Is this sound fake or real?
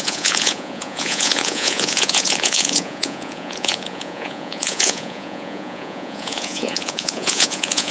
fake